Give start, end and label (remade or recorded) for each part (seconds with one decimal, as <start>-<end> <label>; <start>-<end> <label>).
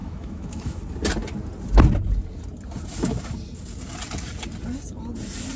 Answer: 0.0-0.8 remade; 0.8-5.6 recorded